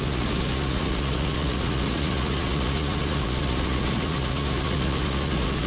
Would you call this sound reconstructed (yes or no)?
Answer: yes